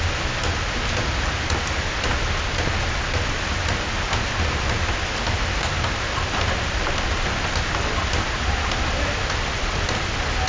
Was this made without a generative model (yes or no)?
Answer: yes